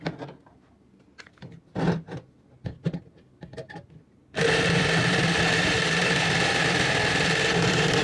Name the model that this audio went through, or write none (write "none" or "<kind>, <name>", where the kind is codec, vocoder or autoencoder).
none